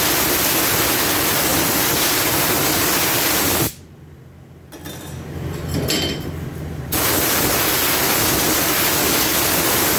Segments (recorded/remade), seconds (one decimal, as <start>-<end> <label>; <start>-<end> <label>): 0.0-1.5 recorded; 1.5-3.7 remade; 3.7-10.0 recorded